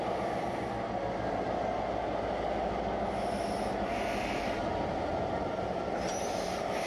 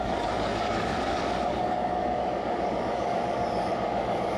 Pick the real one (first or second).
first